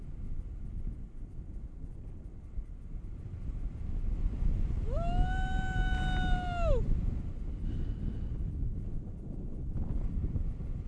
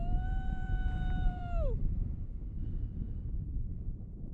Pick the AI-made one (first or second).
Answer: second